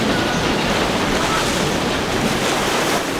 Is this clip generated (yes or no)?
yes